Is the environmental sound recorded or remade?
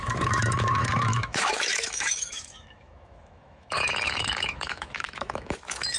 remade